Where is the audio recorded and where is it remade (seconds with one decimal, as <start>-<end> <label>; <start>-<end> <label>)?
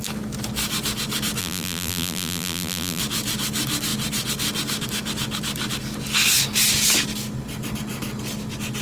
0.0-1.4 recorded; 1.4-3.0 remade; 3.0-8.8 recorded